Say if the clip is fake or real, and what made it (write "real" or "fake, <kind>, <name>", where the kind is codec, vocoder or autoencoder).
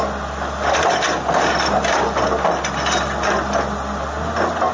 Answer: real